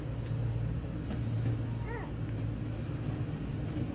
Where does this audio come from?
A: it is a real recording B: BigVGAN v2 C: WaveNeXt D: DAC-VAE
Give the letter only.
A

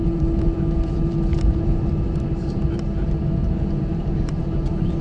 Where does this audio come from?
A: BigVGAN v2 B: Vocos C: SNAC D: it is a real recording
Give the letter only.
A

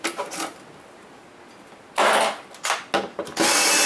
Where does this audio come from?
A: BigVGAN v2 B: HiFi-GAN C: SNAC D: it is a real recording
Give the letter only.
D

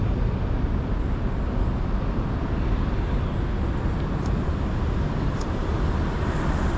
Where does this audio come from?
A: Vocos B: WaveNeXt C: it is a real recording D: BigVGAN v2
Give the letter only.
C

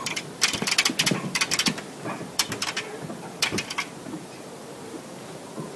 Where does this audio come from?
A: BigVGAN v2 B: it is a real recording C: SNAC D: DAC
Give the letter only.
A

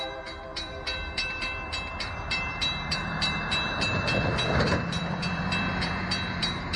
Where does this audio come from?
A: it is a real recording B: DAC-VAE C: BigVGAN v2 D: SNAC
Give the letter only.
C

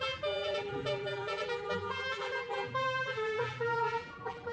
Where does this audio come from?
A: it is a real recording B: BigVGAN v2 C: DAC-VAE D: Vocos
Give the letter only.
B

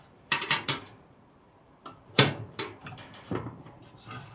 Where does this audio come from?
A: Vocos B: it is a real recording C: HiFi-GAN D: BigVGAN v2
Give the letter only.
D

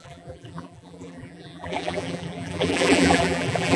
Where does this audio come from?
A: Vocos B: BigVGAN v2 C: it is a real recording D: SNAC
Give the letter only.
B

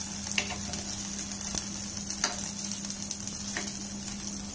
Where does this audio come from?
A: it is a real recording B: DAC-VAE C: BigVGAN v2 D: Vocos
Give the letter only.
A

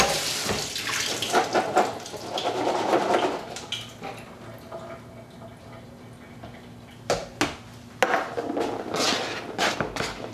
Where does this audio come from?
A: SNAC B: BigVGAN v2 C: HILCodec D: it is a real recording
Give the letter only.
D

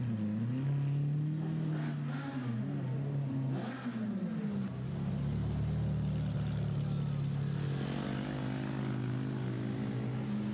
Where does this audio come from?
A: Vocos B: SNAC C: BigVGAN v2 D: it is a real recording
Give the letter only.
D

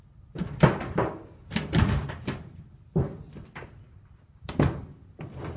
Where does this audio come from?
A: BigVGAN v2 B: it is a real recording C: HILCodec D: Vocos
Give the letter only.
A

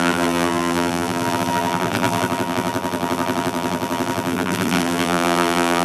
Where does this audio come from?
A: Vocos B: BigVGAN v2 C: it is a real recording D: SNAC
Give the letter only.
B